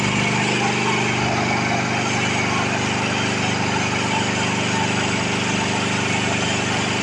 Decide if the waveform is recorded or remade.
recorded